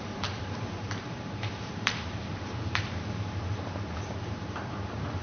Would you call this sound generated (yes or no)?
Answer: yes